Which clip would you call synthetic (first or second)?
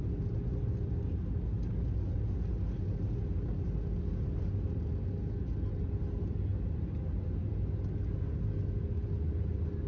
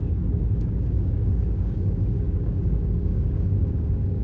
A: second